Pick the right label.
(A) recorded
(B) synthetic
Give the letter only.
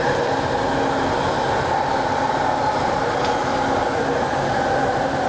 A